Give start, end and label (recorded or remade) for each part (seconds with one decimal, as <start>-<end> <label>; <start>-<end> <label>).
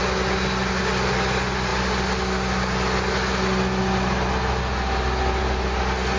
0.0-6.2 recorded